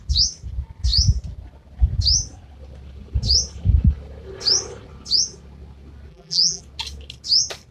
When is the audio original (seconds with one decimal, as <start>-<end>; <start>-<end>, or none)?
0.0-6.1; 6.6-7.7